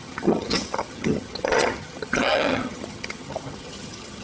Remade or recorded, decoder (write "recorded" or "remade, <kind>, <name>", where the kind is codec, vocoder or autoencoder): remade, vocoder, HiFi-GAN